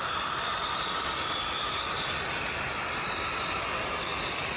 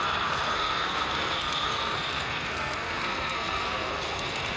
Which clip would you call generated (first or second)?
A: second